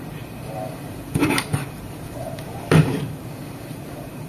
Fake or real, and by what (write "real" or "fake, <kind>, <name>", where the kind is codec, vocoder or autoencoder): fake, vocoder, BigVGAN v2